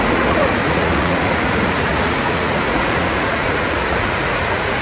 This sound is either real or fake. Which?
fake